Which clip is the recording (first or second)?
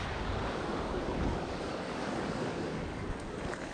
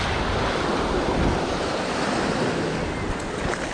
second